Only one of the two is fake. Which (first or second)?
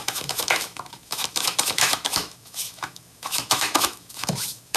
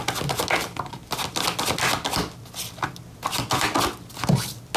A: first